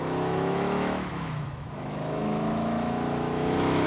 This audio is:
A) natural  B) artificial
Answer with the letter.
B